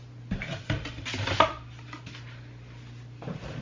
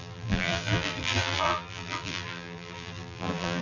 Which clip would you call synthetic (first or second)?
second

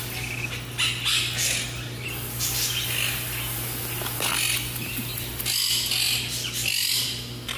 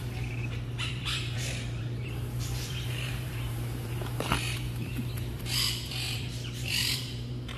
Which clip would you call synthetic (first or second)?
second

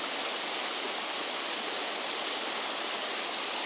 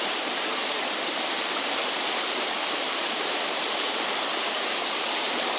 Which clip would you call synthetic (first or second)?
second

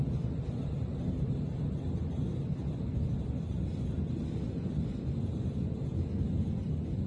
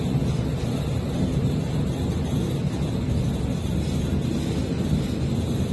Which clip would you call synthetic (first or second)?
first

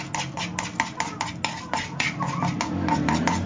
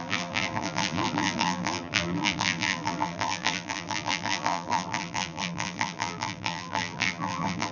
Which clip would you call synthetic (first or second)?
second